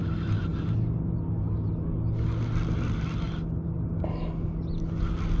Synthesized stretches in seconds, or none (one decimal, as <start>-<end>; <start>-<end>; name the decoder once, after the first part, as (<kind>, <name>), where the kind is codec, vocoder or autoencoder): none